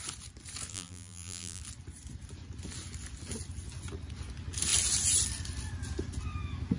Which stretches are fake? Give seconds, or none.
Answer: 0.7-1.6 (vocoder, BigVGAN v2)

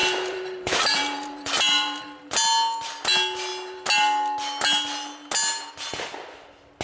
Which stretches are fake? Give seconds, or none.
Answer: 0.0-2.3 (vocoder, BigVGAN v2)